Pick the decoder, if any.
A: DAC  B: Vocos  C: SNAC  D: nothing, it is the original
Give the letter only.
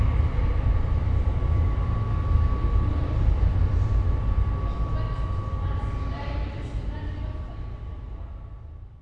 D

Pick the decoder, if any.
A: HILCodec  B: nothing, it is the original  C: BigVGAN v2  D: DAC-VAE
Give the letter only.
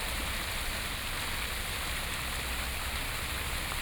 B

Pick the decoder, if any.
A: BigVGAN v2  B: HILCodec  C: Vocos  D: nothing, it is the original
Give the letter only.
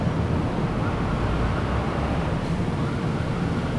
D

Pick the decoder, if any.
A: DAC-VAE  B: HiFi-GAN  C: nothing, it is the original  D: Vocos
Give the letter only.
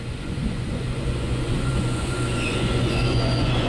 D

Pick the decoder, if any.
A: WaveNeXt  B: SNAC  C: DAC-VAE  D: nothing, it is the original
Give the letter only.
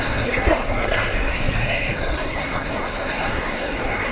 B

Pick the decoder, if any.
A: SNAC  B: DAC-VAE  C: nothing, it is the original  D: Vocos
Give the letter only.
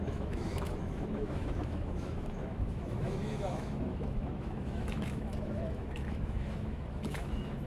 B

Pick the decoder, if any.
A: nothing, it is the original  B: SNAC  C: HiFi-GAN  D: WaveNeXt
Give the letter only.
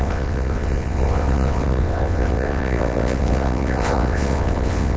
D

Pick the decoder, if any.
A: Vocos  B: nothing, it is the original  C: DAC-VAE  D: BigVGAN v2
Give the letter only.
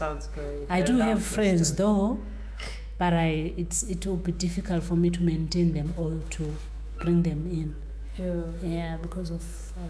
C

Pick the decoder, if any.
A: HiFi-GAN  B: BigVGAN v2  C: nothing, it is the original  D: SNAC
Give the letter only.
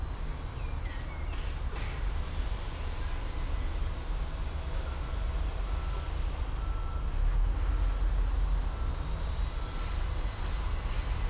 C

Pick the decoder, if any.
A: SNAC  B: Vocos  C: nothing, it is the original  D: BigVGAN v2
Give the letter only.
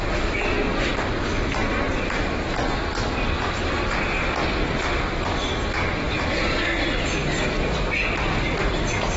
D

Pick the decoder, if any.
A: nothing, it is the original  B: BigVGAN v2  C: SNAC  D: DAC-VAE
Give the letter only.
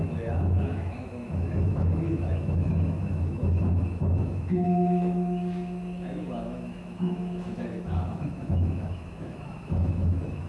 D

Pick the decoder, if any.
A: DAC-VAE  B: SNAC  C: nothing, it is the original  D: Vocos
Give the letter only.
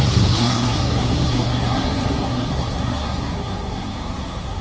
B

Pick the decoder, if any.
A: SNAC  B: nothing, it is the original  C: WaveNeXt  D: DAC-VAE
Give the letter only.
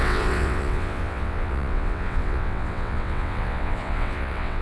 C